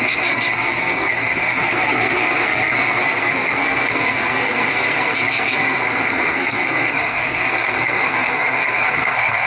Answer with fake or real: fake